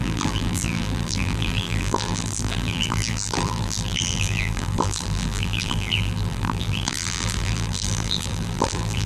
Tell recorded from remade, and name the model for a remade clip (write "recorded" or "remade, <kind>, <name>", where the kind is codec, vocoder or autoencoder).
remade, vocoder, BigVGAN v2